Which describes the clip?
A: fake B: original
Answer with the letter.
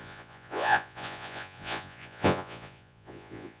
A